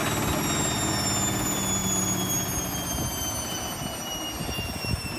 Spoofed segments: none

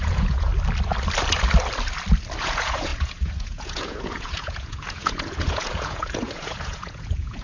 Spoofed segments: 0.0-0.5 (vocoder, Vocos); 2.4-7.4

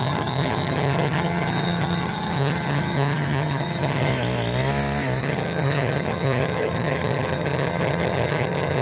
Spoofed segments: 0.0-4.1 (vocoder, HiFi-GAN); 5.2-8.8

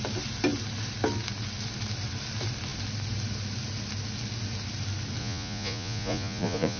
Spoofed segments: 5.2-6.8 (vocoder, Vocos)

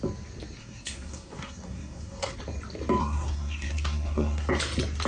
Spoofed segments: 0.6-2.4 (codec, SNAC); 3.0-4.5

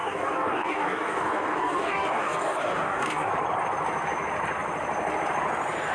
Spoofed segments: 0.0-3.3 (codec, DAC)

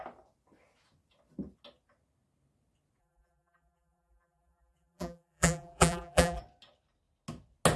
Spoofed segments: 3.0-6.4 (vocoder, BigVGAN v2)